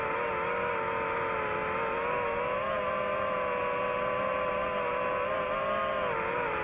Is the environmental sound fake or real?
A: real